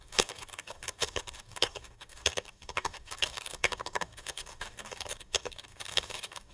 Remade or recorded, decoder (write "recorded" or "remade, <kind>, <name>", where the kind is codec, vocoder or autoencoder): remade, codec, DAC